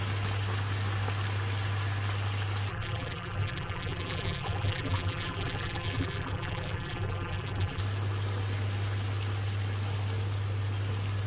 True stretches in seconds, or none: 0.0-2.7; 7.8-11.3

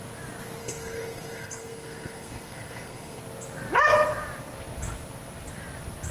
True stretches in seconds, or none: 0.0-0.6; 3.2-6.1

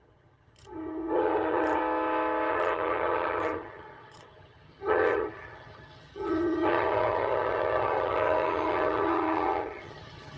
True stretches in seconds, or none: 1.8-2.5

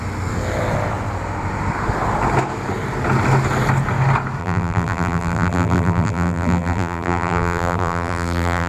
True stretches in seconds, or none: 0.0-4.4

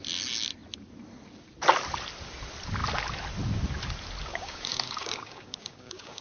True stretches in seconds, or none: 0.0-4.3

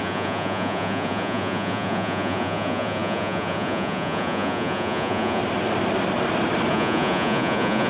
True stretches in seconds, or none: 5.4-6.7